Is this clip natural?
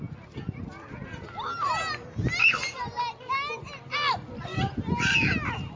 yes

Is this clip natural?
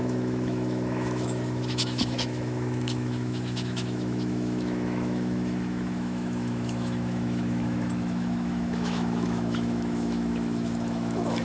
no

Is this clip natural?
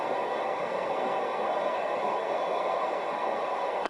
no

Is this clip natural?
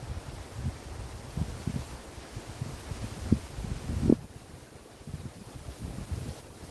yes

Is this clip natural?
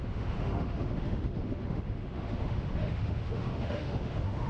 no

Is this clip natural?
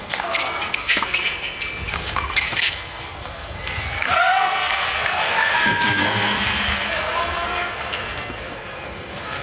no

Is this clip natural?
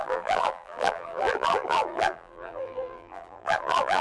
no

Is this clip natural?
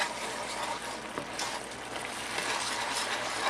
yes